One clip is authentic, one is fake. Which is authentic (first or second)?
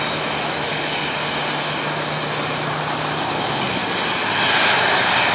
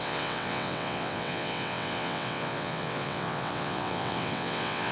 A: first